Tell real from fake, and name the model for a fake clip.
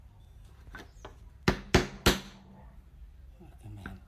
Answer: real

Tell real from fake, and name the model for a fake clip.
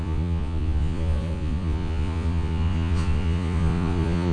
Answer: fake, vocoder, Vocos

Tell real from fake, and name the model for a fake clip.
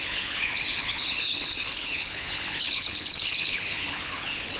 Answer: fake, codec, HILCodec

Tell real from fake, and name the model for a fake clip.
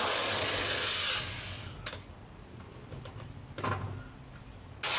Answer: real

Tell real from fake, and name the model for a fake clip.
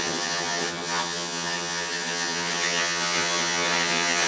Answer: fake, vocoder, HiFi-GAN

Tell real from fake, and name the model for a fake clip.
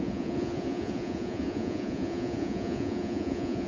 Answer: fake, vocoder, Vocos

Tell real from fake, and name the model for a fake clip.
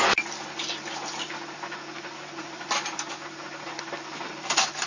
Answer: real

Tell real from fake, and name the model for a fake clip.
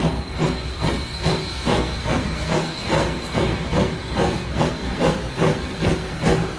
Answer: fake, codec, SNAC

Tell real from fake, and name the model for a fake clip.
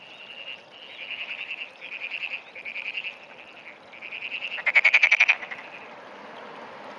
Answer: real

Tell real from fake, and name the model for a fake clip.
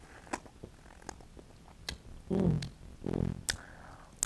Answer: real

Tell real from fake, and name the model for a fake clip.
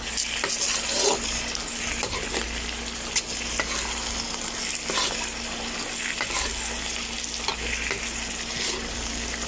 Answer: real